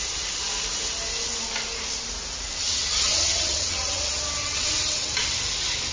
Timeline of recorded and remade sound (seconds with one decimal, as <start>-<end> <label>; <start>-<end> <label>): 0.0-2.5 recorded; 2.5-4.0 remade; 4.0-4.4 recorded; 4.4-5.1 remade; 5.1-5.9 recorded